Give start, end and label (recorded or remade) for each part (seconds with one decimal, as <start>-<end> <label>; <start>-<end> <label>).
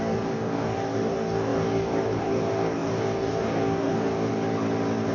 0.0-4.3 remade; 4.3-5.1 recorded